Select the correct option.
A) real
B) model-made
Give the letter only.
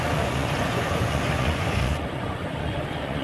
B